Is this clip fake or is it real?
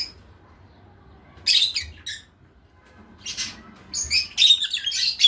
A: real